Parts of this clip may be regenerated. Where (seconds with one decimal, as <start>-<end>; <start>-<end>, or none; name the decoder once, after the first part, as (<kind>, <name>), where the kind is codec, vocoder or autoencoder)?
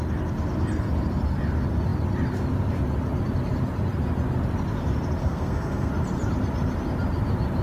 5.2-5.9 (codec, SNAC)